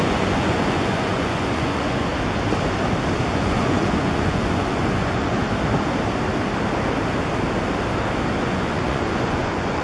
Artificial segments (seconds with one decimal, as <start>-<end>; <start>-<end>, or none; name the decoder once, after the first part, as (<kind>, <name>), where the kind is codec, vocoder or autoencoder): 0.0-2.1 (vocoder, Vocos); 3.3-5.4; 8.4-9.8